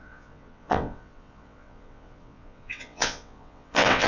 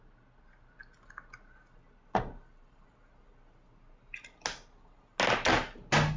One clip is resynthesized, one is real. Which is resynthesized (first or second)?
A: first